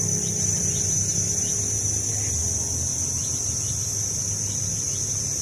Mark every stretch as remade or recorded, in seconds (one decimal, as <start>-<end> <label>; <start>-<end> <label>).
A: 0.0-5.4 recorded